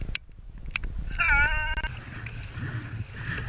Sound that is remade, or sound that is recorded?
recorded